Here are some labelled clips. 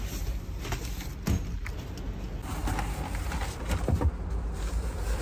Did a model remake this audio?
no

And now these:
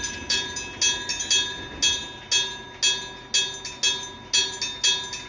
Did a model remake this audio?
no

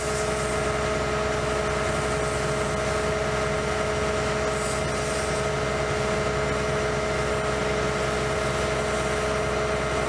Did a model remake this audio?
no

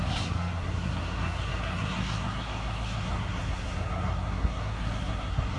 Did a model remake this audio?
yes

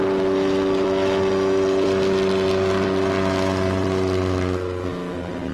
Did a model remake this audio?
no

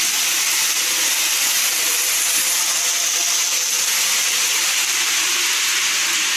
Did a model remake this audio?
no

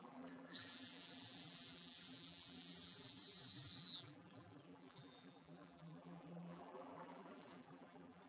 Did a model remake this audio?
yes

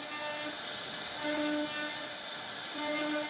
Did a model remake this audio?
no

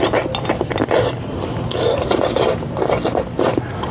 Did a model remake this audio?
no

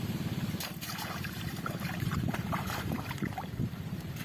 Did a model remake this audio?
yes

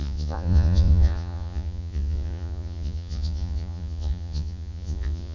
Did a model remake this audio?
yes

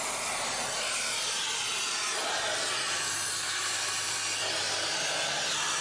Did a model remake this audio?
no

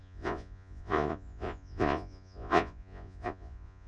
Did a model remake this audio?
yes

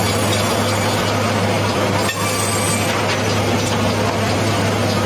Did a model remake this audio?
no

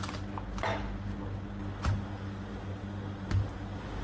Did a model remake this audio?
no